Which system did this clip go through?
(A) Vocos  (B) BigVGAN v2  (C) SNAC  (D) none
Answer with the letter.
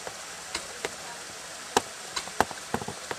D